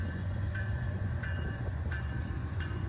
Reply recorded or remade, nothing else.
remade